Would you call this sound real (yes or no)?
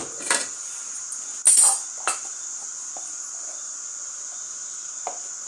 yes